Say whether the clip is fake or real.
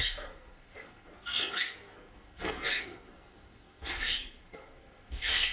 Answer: fake